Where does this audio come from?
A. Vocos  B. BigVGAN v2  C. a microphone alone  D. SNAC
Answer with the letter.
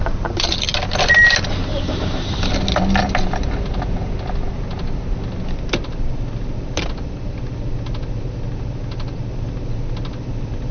C